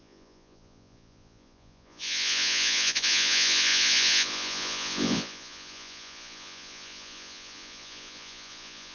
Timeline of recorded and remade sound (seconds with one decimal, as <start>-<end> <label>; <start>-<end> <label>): 0.0-8.9 remade